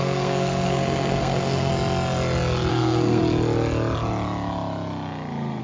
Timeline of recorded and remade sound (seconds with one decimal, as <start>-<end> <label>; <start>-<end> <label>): 0.0-1.7 remade; 1.7-2.7 recorded; 2.7-3.2 remade; 3.2-5.6 recorded